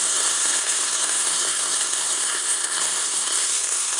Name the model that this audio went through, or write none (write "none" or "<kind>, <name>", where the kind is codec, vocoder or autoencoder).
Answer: codec, SNAC